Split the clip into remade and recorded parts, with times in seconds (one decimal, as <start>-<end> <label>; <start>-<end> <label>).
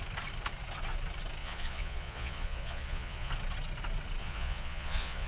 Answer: 0.0-1.4 recorded; 1.4-3.3 remade; 3.3-4.2 recorded; 4.2-5.3 remade